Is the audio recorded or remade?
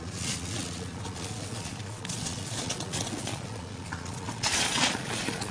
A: remade